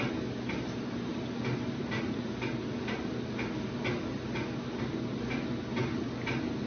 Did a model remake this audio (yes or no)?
no